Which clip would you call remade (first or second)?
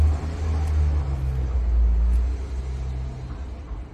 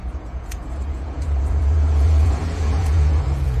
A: second